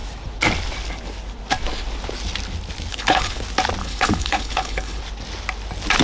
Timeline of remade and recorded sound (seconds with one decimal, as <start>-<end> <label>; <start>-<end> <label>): 0.0-2.9 recorded; 2.9-3.4 remade; 3.4-3.8 recorded; 3.8-5.0 remade; 5.0-6.0 recorded